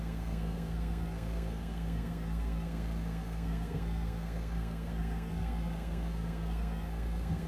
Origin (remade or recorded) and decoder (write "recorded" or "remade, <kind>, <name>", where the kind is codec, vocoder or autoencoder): remade, codec, SNAC